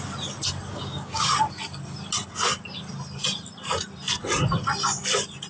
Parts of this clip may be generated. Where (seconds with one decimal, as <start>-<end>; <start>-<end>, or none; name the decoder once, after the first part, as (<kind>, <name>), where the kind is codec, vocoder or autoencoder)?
0.7-1.3 (codec, DAC)

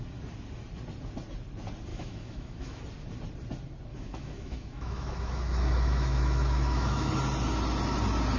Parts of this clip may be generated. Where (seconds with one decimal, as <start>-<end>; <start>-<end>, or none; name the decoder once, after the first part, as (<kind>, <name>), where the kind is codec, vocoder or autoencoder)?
1.9-2.8 (autoencoder, DAC-VAE); 3.9-7.1